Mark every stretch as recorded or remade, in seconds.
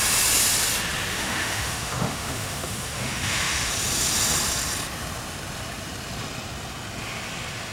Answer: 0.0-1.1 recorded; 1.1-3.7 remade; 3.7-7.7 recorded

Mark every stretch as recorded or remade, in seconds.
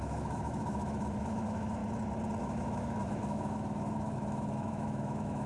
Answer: 0.0-1.8 remade; 1.8-2.4 recorded; 2.4-5.5 remade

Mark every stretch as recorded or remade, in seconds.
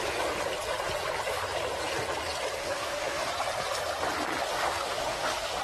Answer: 0.0-2.6 recorded; 2.6-3.3 remade; 3.3-4.5 recorded; 4.5-5.6 remade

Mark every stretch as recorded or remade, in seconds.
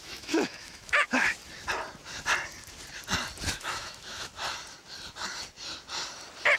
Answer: 0.0-1.4 remade; 1.4-3.5 recorded; 3.5-4.3 remade; 4.3-6.6 recorded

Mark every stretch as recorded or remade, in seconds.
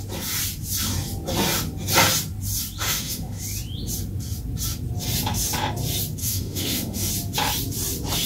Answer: 0.0-2.8 recorded; 2.8-3.4 remade; 3.4-6.2 recorded; 6.2-7.1 remade; 7.1-8.3 recorded